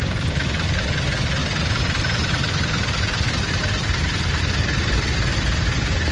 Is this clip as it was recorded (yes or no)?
no